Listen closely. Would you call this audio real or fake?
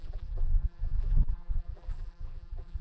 fake